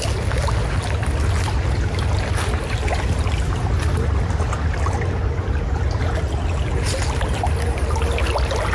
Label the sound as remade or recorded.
recorded